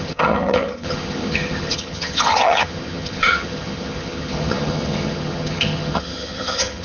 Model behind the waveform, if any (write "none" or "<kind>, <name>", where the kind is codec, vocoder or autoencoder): vocoder, HiFi-GAN